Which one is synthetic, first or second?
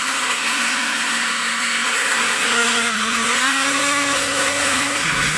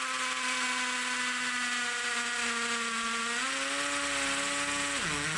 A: first